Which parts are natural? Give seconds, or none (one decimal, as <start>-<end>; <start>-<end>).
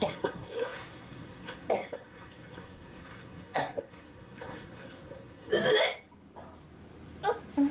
5.5-7.7